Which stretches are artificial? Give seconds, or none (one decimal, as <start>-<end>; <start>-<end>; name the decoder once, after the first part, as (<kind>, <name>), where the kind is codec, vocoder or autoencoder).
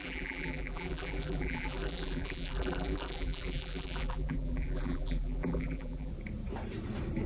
0.0-6.1 (vocoder, BigVGAN v2)